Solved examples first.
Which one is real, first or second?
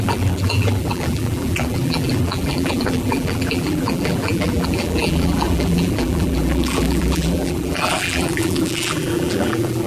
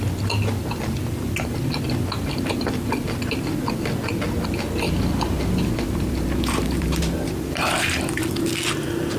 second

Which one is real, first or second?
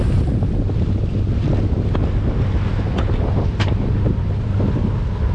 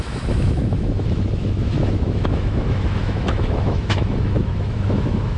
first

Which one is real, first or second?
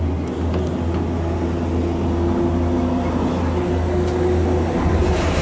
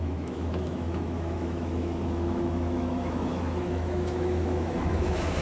first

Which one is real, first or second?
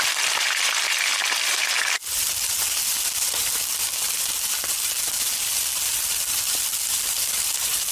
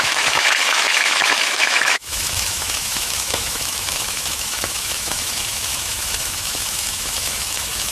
first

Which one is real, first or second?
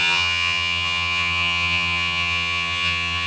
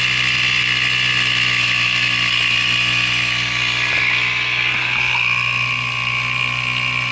second